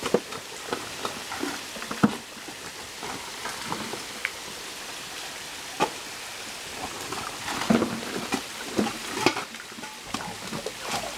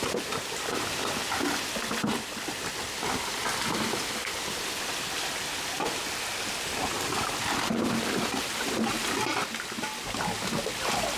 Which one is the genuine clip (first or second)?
second